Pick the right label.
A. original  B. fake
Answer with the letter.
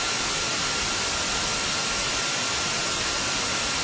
A